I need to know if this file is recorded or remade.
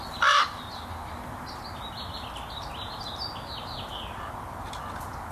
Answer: recorded